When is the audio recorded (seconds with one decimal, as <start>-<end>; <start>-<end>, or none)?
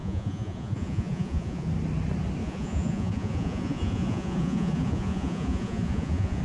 1.7-2.4